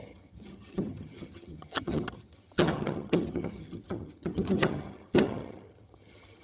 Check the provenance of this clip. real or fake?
fake